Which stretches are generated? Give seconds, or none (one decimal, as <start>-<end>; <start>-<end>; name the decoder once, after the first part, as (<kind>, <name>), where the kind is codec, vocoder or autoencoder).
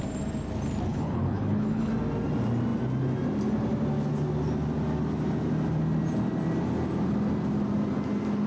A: 0.9-1.9 (codec, HILCodec)